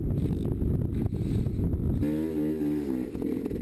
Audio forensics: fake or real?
real